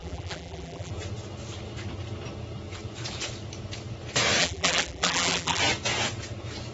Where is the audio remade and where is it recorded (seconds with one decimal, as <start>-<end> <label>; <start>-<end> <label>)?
0.0-0.9 remade; 0.9-4.4 recorded; 4.4-5.6 remade; 5.6-6.7 recorded